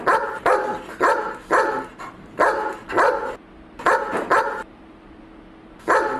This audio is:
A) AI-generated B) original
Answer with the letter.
B